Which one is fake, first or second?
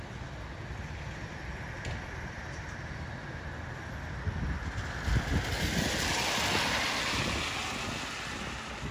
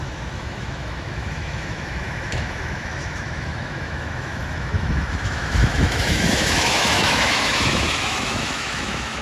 second